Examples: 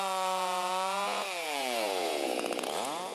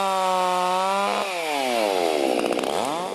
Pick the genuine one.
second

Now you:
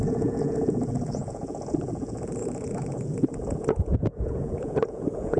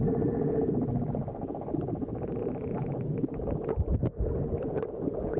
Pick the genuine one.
second